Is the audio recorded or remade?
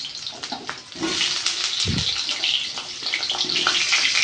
recorded